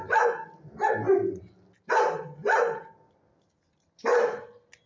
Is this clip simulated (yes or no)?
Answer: no